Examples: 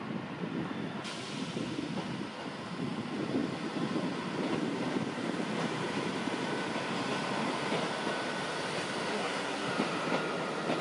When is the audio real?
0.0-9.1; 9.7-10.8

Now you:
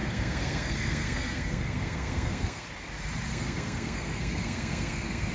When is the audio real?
2.7-3.3

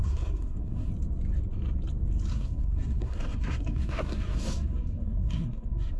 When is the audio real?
0.9-2.3

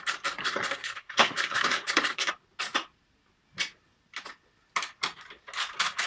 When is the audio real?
0.0-0.4; 2.3-6.1

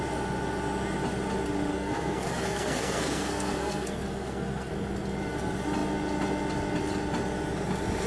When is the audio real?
0.0-1.7; 4.7-8.1

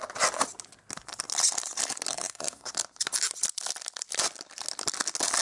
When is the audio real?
0.0-2.1; 2.7-5.4

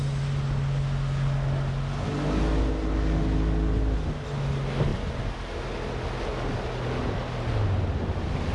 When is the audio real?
0.0-8.5